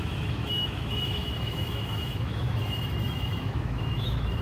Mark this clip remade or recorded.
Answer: remade